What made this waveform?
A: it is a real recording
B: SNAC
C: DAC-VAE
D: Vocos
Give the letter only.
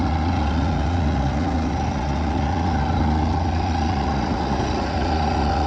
D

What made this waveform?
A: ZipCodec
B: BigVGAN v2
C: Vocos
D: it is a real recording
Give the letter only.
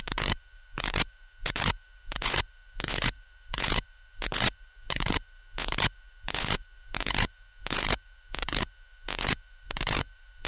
C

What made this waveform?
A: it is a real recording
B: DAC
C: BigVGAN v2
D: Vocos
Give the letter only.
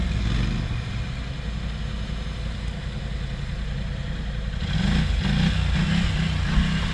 A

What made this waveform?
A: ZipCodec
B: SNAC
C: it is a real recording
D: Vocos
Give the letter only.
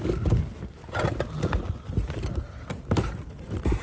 C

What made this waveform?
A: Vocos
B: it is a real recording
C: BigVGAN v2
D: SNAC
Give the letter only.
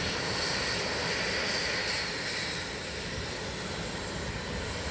B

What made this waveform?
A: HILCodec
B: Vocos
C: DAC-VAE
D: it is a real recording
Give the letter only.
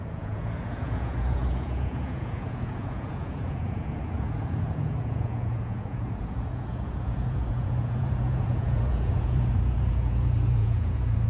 B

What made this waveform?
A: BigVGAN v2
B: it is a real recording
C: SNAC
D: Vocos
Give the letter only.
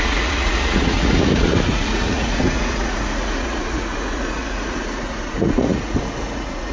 D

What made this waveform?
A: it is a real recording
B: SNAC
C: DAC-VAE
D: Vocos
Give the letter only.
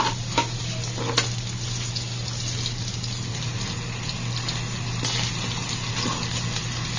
A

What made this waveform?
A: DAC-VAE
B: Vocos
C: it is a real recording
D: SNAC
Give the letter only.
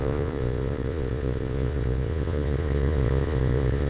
B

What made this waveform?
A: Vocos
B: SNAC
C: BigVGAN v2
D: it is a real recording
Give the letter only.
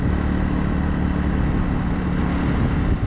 D